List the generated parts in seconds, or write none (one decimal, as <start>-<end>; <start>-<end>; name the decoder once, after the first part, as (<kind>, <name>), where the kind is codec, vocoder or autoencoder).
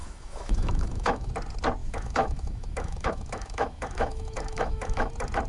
0.0-1.3 (autoencoder, DAC-VAE); 1.8-5.1